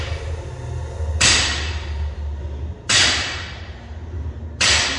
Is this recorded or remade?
recorded